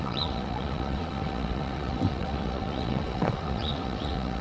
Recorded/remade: remade